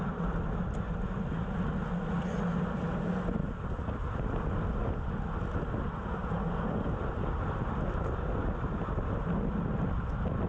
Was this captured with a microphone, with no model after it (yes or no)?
yes